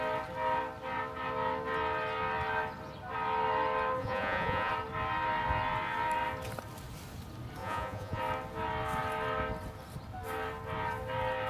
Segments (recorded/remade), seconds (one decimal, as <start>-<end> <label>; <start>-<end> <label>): 0.0-4.0 recorded; 4.0-4.7 remade; 4.7-7.6 recorded; 7.6-8.2 remade; 8.2-11.5 recorded